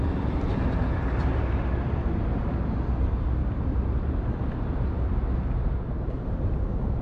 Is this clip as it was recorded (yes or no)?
yes